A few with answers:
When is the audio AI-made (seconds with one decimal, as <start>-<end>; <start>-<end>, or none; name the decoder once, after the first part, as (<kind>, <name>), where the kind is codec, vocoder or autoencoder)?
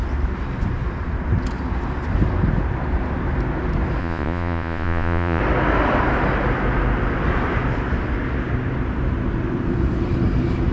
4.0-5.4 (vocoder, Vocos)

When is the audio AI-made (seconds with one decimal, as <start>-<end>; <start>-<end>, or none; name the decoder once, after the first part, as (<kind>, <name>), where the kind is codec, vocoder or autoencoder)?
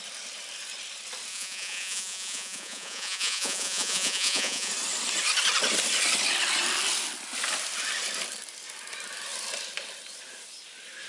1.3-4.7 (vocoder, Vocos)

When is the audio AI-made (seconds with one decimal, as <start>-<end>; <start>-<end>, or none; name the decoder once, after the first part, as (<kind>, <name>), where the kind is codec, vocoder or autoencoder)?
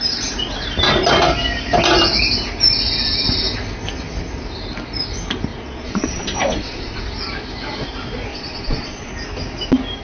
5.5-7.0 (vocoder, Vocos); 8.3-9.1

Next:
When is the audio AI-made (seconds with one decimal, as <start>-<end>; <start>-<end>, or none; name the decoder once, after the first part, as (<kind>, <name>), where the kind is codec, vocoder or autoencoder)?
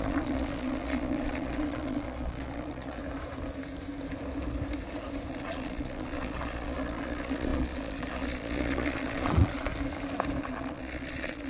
0.0-3.0 (vocoder, Vocos); 5.3-9.7; 10.4-11.5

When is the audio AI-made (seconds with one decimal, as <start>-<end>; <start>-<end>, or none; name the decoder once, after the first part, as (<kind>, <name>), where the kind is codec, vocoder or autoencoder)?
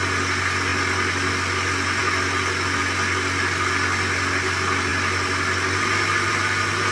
none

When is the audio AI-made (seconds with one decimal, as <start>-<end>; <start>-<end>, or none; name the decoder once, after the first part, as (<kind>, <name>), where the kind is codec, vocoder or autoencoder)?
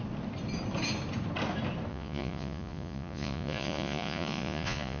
1.9-5.0 (vocoder, Vocos)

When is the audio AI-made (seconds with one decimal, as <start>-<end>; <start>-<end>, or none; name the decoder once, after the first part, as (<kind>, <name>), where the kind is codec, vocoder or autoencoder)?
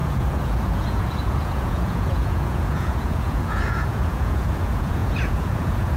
0.0-6.0 (vocoder, Vocos)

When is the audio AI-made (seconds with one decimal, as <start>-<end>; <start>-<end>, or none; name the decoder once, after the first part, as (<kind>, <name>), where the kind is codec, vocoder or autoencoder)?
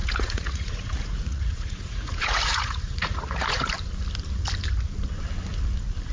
0.0-3.7 (vocoder, Vocos)